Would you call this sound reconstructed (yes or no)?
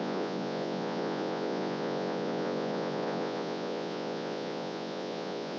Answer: yes